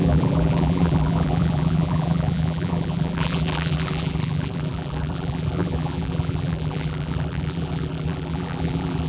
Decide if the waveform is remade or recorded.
remade